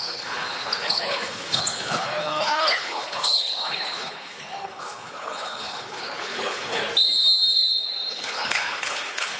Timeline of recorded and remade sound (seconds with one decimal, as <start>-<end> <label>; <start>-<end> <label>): 0.0-6.8 remade; 6.8-8.1 recorded; 8.1-9.4 remade

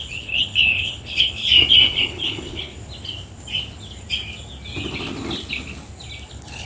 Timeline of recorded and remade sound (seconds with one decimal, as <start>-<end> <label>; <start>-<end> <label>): 0.0-1.4 remade; 1.4-2.0 recorded; 2.0-2.7 remade; 2.7-6.3 recorded; 6.3-6.7 remade

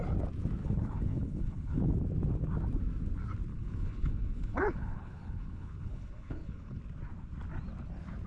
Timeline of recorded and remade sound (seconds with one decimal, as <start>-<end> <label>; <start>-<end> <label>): 0.0-0.6 recorded; 0.6-1.9 remade; 1.9-3.5 recorded; 3.5-6.8 remade; 6.8-8.3 recorded

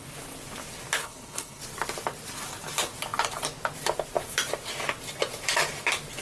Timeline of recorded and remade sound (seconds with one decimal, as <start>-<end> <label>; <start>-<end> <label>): 0.0-1.0 recorded; 1.0-1.6 remade; 1.6-6.2 recorded

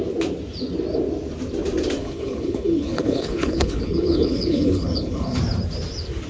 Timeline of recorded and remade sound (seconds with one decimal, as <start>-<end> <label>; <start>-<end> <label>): 0.0-2.0 recorded; 2.0-5.4 remade; 5.4-6.3 recorded

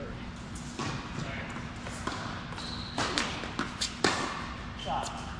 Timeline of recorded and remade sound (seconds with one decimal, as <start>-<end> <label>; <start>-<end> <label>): 0.0-5.4 recorded

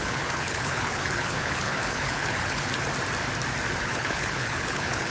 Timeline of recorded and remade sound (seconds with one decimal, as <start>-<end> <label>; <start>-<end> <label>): 0.0-2.7 remade; 2.7-3.8 recorded; 3.8-5.1 remade